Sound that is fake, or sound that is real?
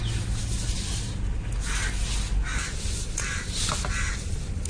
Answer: real